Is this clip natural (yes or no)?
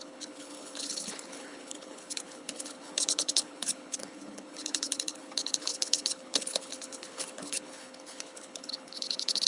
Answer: no